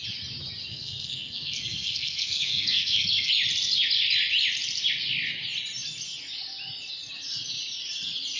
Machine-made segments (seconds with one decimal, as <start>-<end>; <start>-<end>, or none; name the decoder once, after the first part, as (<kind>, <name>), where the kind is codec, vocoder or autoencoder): 0.7-3.3 (codec, SNAC)